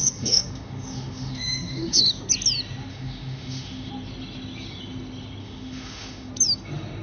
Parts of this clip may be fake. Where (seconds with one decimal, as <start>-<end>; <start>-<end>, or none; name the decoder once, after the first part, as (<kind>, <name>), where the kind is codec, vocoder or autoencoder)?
0.0-2.0 (autoencoder, DAC-VAE); 2.9-3.9; 5.4-6.3

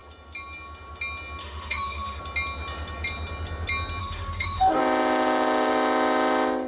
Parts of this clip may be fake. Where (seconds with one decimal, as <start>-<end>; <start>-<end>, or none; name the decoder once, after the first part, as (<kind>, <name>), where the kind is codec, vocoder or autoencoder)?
1.4-2.2 (autoencoder, DAC-VAE); 4.0-4.8

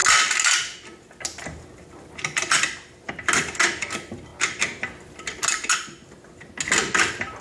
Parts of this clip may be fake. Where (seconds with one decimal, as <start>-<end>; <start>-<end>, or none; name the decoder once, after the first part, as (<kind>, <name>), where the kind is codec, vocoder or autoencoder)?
none

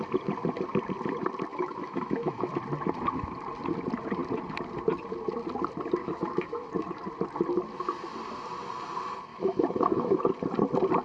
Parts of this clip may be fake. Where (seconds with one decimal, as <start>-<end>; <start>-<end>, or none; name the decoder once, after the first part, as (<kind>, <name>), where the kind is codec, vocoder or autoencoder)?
1.5-2.5 (autoencoder, DAC-VAE); 6.0-6.7; 9.3-10.2

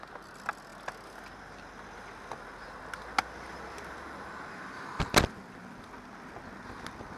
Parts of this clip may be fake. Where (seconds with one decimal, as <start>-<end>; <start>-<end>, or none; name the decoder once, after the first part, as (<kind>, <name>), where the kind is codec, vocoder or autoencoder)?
none

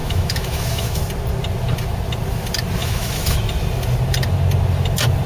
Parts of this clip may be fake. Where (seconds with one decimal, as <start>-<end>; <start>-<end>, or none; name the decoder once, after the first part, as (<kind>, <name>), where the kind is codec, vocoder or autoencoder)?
0.0-1.0 (autoencoder, DAC-VAE); 2.8-3.4

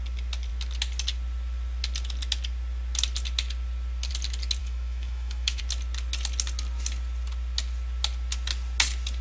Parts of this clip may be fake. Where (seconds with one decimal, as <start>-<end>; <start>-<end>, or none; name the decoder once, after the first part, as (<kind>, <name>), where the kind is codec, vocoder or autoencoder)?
4.6-5.6 (autoencoder, DAC-VAE)

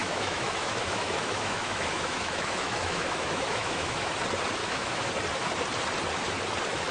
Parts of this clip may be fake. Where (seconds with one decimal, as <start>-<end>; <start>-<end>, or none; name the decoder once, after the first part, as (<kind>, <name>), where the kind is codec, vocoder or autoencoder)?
0.0-4.1 (autoencoder, DAC-VAE); 4.6-5.1